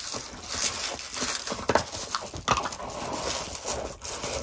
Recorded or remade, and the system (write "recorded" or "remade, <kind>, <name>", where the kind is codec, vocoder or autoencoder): recorded